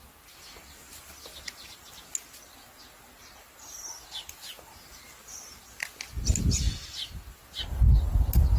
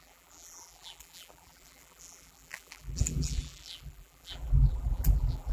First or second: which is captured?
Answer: first